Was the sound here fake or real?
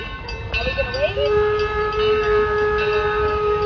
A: real